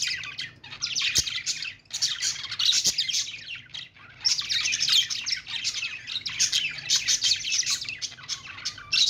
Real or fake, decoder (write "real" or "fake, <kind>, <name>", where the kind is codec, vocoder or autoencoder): real